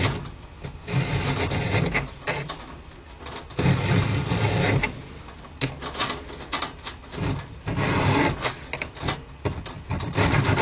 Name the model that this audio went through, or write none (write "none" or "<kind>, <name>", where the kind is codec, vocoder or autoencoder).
none